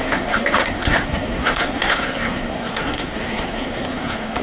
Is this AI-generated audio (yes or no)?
yes